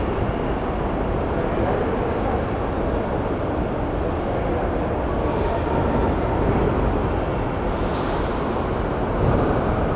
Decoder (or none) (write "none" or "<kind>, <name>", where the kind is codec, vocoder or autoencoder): none